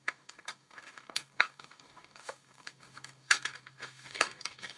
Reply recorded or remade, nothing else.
remade